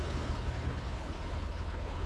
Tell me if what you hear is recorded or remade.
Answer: remade